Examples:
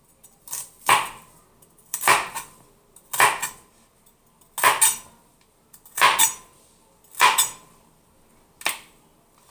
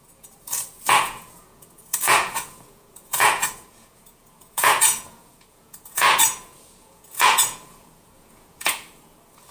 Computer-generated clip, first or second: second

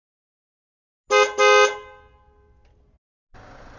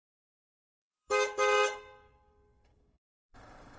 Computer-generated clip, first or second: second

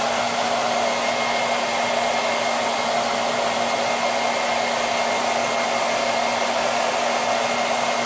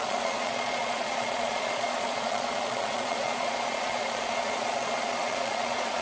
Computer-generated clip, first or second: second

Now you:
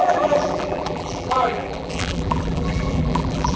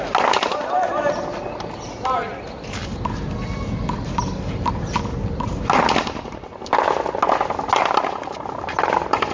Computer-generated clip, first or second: first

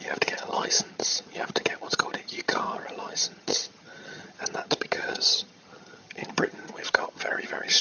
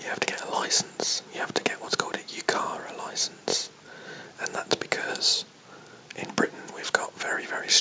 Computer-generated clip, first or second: first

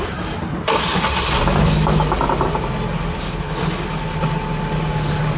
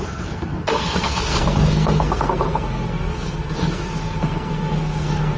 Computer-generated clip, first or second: second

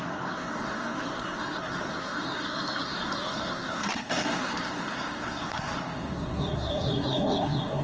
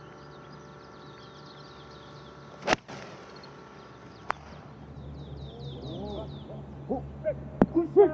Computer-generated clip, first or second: first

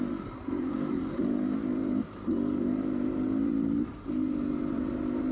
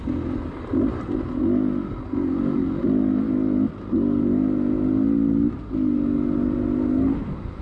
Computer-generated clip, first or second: first